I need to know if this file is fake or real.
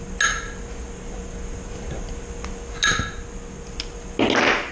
real